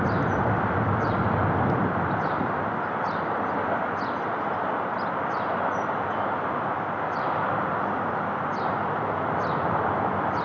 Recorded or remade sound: recorded